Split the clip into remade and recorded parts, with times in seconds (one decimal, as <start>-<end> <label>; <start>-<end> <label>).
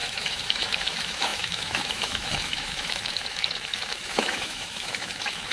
0.0-5.5 remade